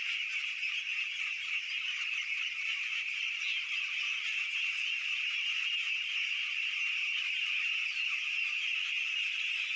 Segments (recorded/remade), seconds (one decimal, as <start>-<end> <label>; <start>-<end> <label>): 0.0-9.8 remade